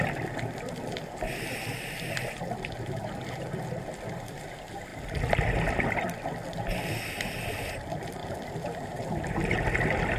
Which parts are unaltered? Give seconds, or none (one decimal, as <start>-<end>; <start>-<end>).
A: 0.0-10.2